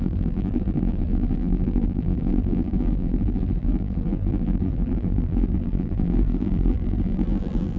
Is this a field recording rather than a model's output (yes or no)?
no